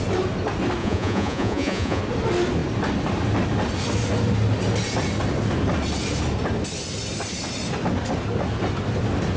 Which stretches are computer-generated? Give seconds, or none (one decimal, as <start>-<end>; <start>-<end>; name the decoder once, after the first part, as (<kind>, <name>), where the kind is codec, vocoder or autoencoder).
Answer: 0.8-2.0 (vocoder, Vocos)

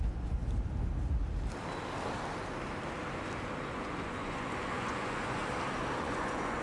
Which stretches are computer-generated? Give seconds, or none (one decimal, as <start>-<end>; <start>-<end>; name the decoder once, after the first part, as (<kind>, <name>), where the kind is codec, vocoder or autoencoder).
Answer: 0.0-0.4 (vocoder, Vocos); 3.7-5.4; 6.0-6.6

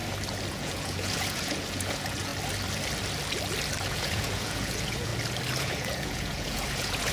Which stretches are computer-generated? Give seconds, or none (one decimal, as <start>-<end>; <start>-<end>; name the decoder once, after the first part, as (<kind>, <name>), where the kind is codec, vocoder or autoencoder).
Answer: 0.5-2.3 (vocoder, Vocos); 3.8-5.1; 5.6-7.1

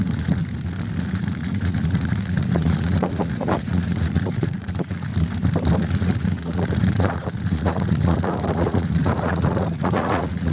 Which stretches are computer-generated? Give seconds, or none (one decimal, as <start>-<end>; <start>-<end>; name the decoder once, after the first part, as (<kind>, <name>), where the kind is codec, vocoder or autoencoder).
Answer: 0.0-0.4 (vocoder, Vocos); 1.0-5.1; 5.8-10.5

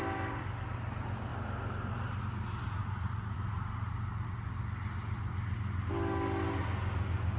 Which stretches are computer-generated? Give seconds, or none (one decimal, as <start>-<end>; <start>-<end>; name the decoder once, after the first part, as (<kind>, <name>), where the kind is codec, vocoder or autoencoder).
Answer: 2.6-3.9 (vocoder, Vocos)

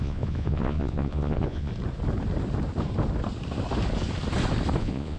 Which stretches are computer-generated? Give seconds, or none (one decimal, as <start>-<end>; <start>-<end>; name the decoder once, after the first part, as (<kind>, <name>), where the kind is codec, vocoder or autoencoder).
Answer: 0.0-1.7 (vocoder, Vocos); 4.8-5.2